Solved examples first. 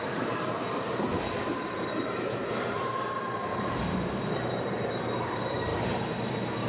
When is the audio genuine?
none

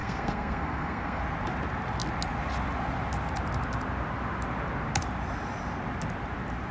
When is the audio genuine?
1.2-6.7

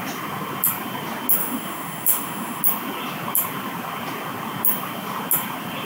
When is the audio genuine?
0.0-1.4; 2.6-5.8

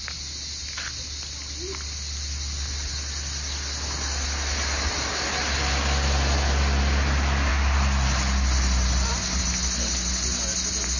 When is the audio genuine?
0.0-11.0

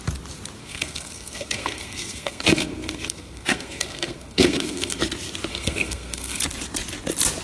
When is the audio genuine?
0.0-0.6; 5.0-5.5; 6.4-7.4